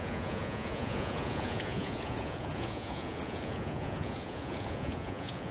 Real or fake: fake